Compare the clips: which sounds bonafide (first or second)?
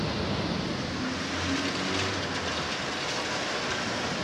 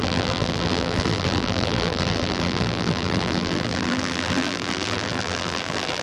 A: first